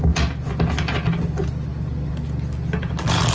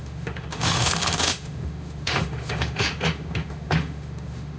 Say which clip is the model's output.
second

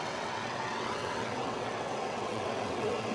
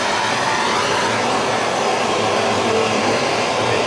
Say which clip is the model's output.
first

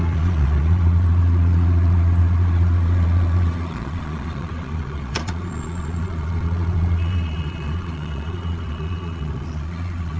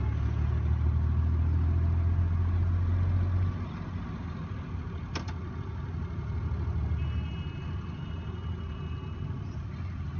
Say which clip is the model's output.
first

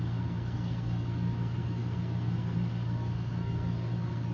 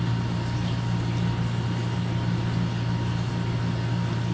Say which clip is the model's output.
first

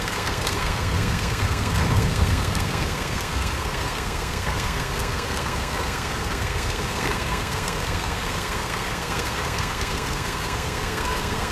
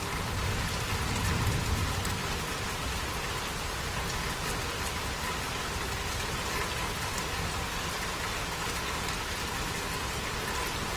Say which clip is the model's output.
first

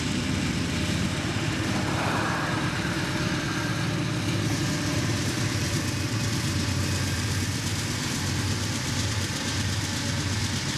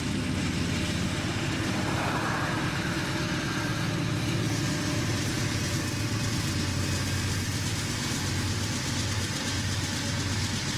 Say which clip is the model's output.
first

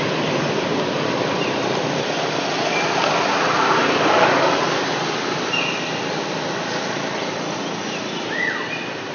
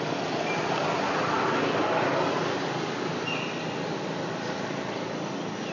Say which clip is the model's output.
first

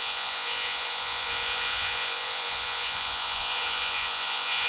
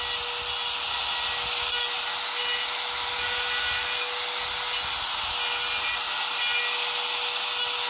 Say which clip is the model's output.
first